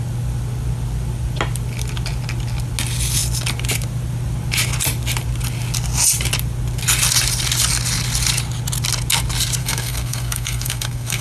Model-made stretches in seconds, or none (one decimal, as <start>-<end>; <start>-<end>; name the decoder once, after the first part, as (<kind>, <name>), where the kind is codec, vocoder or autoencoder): 9.6-11.2 (codec, SNAC)